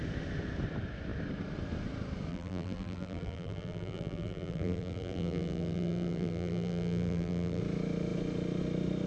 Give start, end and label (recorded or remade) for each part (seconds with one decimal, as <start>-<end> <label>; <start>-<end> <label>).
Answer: 0.0-2.3 recorded; 2.3-7.6 remade; 7.6-9.1 recorded

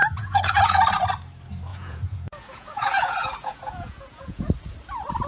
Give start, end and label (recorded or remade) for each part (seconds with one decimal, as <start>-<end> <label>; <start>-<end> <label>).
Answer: 0.0-0.8 remade; 0.8-1.7 recorded; 1.7-4.4 remade; 4.4-5.3 recorded

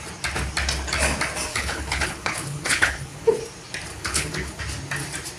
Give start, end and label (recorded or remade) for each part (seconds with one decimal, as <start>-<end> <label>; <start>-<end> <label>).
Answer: 0.0-1.5 recorded; 1.5-3.4 remade; 3.4-3.9 recorded; 3.9-4.6 remade; 4.6-5.4 recorded

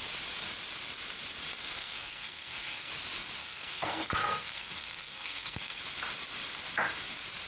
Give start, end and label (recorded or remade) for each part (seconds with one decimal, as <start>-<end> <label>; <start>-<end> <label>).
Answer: 0.0-1.8 recorded; 1.8-2.9 remade; 2.9-3.4 recorded; 3.4-5.8 remade; 5.8-7.5 recorded

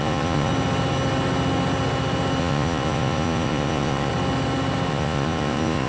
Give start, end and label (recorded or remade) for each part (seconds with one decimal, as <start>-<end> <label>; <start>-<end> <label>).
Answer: 0.0-0.5 remade; 0.5-2.4 recorded; 2.4-4.1 remade; 4.1-4.9 recorded; 4.9-5.9 remade

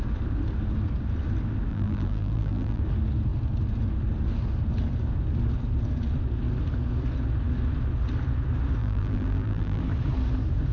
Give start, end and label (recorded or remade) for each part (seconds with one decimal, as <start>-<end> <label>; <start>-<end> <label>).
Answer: 0.0-1.7 recorded; 1.7-2.8 remade; 2.8-8.8 recorded; 8.8-9.8 remade; 9.8-10.7 recorded

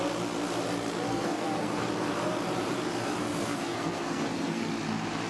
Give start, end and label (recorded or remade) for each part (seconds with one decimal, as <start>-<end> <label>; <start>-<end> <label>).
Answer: 0.0-1.1 recorded; 1.1-1.9 remade; 1.9-3.2 recorded; 3.2-4.7 remade; 4.7-5.3 recorded

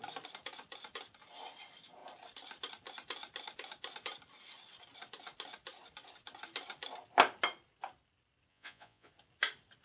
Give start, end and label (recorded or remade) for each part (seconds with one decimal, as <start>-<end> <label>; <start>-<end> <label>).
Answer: 0.0-8.5 recorded; 8.5-9.1 remade; 9.1-9.8 recorded